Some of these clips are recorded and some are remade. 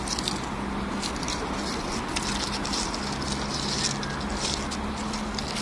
recorded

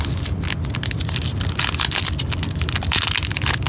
recorded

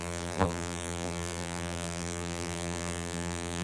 remade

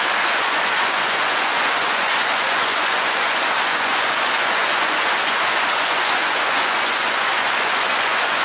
remade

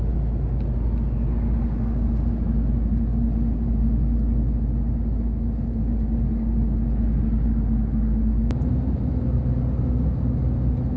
recorded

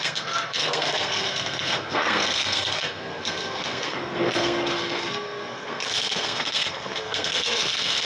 remade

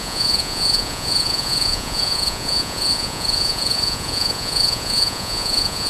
remade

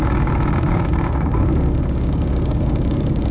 remade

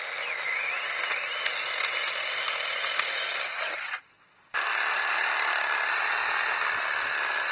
recorded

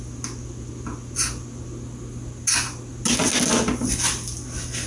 recorded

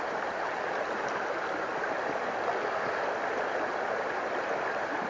recorded